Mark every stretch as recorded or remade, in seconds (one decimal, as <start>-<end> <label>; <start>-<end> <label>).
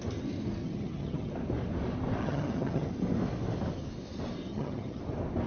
0.0-0.6 recorded; 0.6-1.3 remade; 1.3-2.2 recorded; 2.2-2.9 remade; 2.9-4.5 recorded; 4.5-5.0 remade; 5.0-5.5 recorded